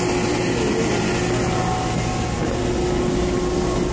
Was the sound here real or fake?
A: real